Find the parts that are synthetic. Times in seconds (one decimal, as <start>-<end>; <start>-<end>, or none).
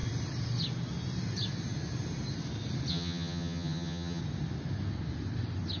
2.9-4.2